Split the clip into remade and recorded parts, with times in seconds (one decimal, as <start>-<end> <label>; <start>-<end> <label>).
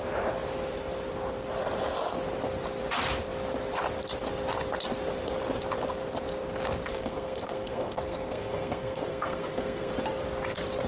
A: 0.0-6.9 recorded; 6.9-9.9 remade; 9.9-10.9 recorded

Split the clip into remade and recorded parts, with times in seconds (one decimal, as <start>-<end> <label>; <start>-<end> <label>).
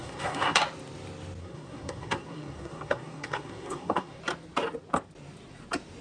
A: 0.0-0.6 remade; 0.6-1.4 recorded; 1.4-4.2 remade; 4.2-6.0 recorded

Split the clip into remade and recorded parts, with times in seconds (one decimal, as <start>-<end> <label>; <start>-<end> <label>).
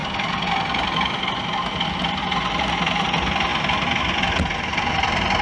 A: 0.0-5.4 recorded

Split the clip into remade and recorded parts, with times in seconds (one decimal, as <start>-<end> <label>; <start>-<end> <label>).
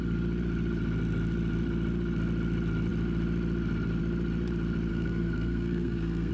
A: 0.0-4.9 recorded; 4.9-6.3 remade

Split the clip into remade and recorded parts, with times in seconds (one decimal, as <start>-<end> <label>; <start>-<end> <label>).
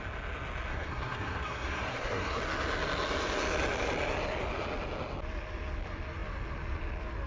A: 0.0-0.7 recorded; 0.7-2.4 remade; 2.4-7.3 recorded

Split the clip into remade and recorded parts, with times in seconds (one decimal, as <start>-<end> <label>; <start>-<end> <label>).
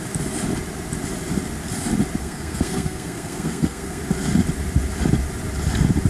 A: 0.0-2.2 recorded; 2.2-4.0 remade; 4.0-6.1 recorded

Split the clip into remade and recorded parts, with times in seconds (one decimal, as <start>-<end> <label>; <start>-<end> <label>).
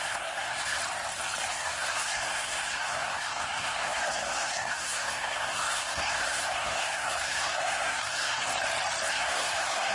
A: 0.0-0.8 remade; 0.8-1.5 recorded; 1.5-8.5 remade; 8.5-9.1 recorded; 9.1-9.9 remade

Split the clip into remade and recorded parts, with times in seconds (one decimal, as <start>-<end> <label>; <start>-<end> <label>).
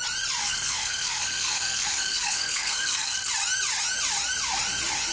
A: 0.0-0.4 recorded; 0.4-3.3 remade; 3.3-5.1 recorded